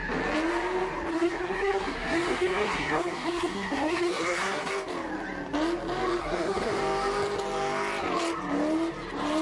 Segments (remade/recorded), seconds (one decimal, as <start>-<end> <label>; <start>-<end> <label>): 0.0-1.1 recorded; 1.1-4.7 remade; 4.7-6.2 recorded; 6.2-6.7 remade; 6.7-9.4 recorded

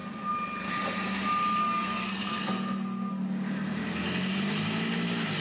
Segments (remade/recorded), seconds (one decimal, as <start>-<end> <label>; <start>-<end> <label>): 0.0-1.6 recorded; 1.6-3.1 remade; 3.1-5.4 recorded

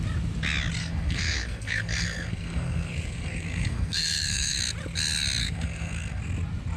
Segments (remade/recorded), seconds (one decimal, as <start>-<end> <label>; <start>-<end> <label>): 0.0-0.8 recorded; 0.8-4.6 remade; 4.6-5.4 recorded; 5.4-6.2 remade; 6.2-6.8 recorded